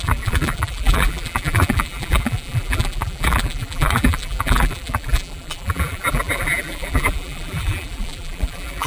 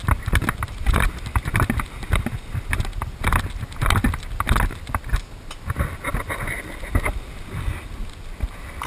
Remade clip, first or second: first